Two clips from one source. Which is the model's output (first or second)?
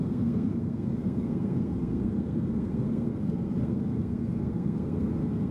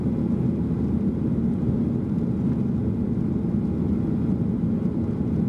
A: first